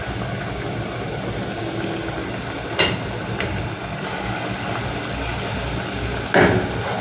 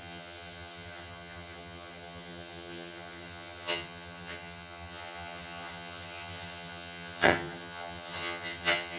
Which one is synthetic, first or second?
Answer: second